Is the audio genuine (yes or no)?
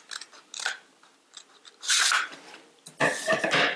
yes